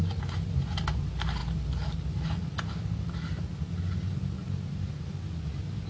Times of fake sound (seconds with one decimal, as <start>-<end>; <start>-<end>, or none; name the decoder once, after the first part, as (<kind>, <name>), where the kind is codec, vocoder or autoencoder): none